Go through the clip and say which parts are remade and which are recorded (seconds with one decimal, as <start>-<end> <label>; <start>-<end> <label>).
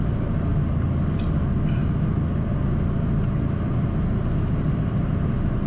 0.0-5.7 recorded